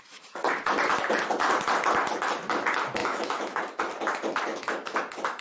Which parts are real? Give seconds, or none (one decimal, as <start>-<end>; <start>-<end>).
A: 0.0-3.0; 3.6-4.5; 5.0-5.4